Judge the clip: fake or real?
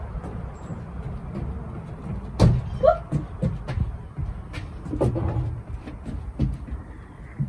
real